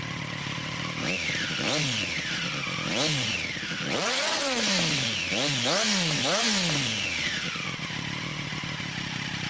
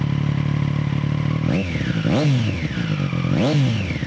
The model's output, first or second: first